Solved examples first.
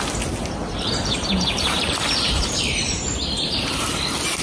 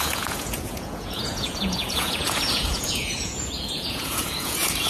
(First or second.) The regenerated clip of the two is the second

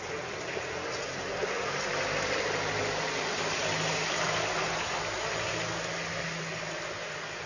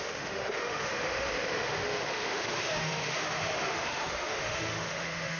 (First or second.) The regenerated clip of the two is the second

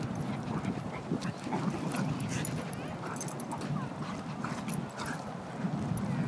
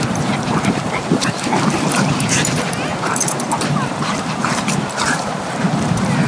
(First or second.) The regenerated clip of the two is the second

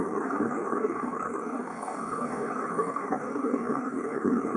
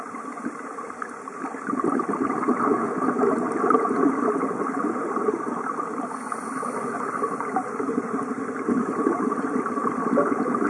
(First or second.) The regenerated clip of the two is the first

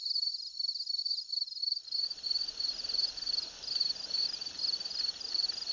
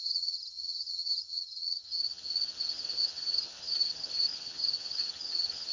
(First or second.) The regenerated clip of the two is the second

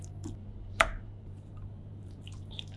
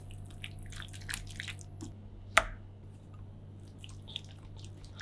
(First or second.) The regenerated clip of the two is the first